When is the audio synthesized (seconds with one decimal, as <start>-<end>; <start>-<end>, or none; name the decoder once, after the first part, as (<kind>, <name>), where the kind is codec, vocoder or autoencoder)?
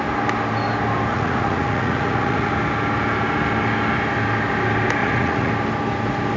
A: 1.1-2.5 (vocoder, Vocos); 5.0-5.5